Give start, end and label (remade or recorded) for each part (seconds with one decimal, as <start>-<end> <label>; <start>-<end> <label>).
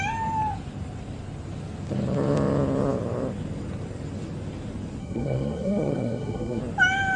0.0-5.0 recorded; 5.0-6.6 remade; 6.6-7.2 recorded